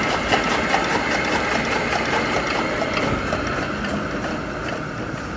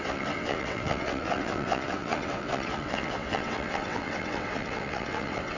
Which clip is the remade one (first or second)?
second